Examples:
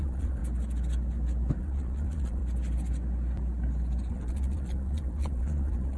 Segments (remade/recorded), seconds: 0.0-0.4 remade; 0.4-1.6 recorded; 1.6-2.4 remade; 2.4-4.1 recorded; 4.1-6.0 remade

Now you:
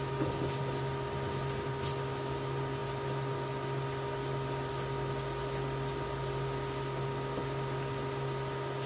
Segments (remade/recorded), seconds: 0.0-8.9 recorded

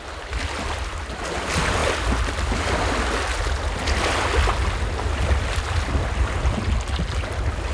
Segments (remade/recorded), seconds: 0.0-7.7 recorded

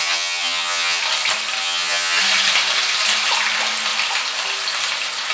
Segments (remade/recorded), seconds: 0.0-1.0 remade; 1.0-1.6 recorded; 1.6-2.2 remade; 2.2-5.3 recorded

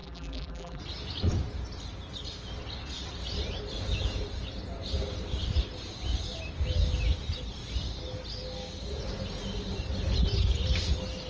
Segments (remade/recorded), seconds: 0.0-0.8 remade; 0.8-11.3 recorded

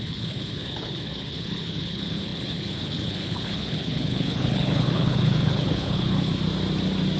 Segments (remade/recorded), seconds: 0.0-6.3 remade; 6.3-7.2 recorded

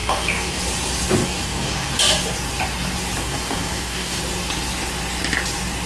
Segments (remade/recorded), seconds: 0.0-0.6 remade; 0.6-1.2 recorded; 1.2-1.9 remade; 1.9-3.2 recorded; 3.2-4.2 remade; 4.2-5.9 recorded